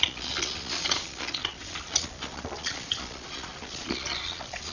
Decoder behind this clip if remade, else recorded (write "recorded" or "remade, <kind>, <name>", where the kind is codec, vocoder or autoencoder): remade, vocoder, Vocos